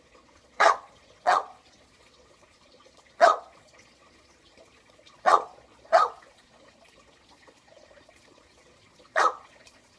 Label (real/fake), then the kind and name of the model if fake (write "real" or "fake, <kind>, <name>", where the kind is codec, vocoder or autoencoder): fake, vocoder, Vocos